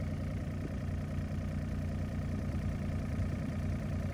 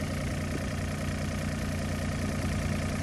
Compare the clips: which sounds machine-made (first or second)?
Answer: first